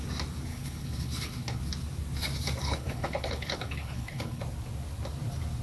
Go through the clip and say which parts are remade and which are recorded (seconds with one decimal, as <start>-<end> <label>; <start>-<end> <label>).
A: 0.0-0.5 recorded; 0.5-1.6 remade; 1.6-2.6 recorded; 2.6-4.4 remade; 4.4-5.6 recorded